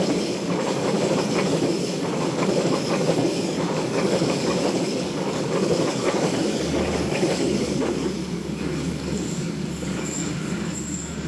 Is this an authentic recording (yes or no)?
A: no